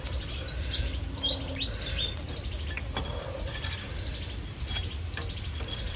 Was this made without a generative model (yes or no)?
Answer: yes